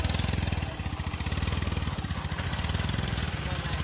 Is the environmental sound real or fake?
real